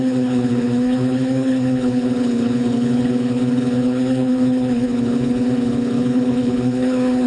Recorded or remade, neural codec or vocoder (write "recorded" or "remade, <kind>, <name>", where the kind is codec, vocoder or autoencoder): remade, codec, HILCodec